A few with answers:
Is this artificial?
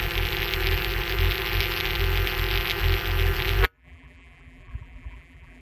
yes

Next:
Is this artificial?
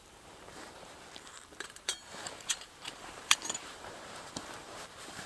yes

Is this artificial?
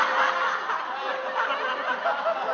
no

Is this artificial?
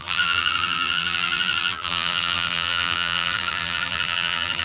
yes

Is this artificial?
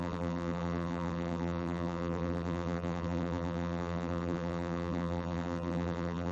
yes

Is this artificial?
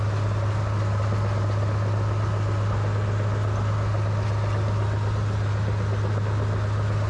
no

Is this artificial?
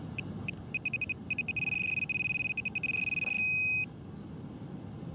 no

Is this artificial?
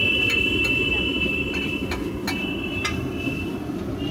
no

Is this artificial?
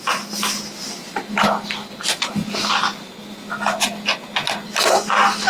no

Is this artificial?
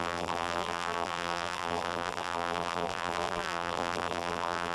yes